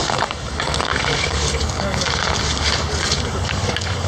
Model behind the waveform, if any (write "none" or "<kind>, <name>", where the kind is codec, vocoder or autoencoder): codec, DAC